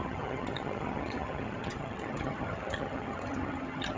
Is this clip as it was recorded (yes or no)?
no